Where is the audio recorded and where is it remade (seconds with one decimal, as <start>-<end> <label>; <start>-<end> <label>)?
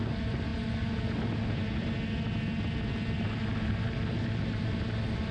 0.0-5.3 recorded